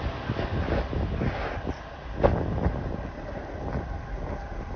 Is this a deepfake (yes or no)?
no